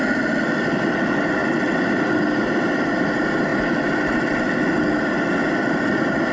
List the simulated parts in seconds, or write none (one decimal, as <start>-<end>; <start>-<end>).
none